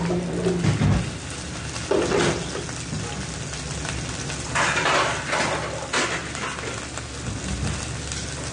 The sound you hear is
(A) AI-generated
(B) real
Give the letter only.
B